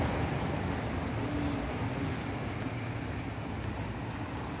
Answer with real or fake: real